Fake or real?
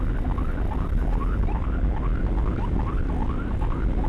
real